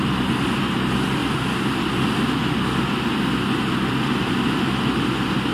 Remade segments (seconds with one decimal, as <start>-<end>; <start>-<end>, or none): none